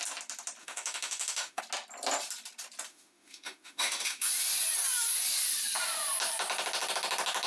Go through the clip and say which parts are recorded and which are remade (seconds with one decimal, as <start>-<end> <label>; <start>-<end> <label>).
0.0-0.6 recorded; 0.6-1.6 remade; 1.6-2.9 recorded; 2.9-4.3 remade; 4.3-7.5 recorded